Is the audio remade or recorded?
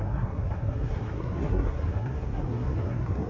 remade